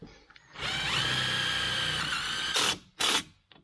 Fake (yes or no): yes